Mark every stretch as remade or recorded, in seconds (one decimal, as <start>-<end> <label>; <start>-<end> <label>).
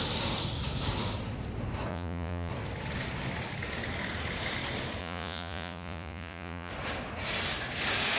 0.0-1.9 recorded; 1.9-2.5 remade; 2.5-5.0 recorded; 5.0-6.7 remade; 6.7-8.2 recorded